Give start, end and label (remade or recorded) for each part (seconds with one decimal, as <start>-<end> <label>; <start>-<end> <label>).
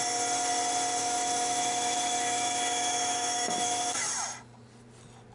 0.0-1.0 recorded; 1.0-4.1 remade; 4.1-5.3 recorded